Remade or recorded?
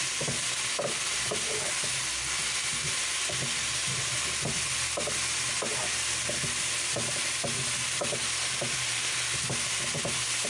recorded